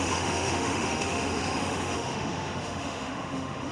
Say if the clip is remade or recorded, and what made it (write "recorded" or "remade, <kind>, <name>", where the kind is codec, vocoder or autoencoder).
remade, autoencoder, DAC-VAE